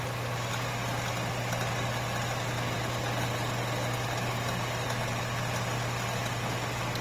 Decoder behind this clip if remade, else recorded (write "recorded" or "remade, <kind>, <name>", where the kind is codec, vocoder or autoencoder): recorded